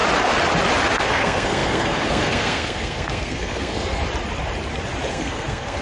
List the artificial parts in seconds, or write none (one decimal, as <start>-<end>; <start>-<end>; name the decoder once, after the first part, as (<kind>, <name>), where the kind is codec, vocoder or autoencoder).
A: 1.0-4.0 (codec, SNAC); 5.1-5.8